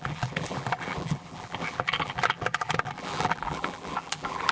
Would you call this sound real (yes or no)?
no